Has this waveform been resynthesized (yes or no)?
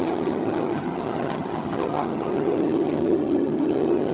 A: yes